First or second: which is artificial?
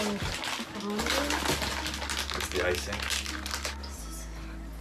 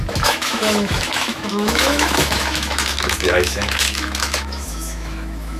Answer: second